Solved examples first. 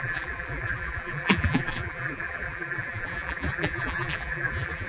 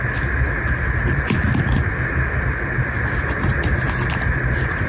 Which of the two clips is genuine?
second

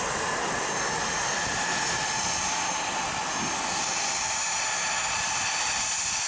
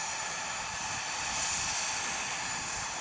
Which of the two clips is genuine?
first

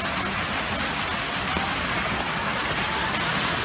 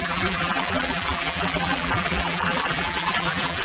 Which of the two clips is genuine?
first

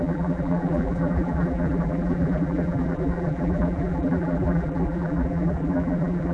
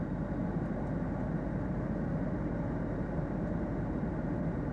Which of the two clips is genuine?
second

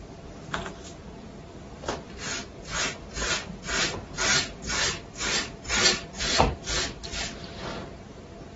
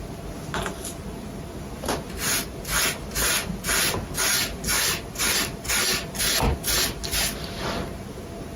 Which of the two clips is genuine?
second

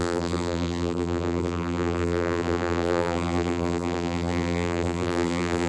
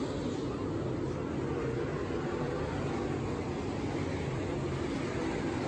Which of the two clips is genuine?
second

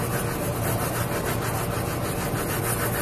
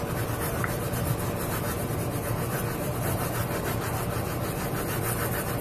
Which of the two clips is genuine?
first